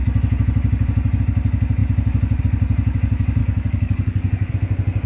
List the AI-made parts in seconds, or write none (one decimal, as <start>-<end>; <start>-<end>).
3.4-4.5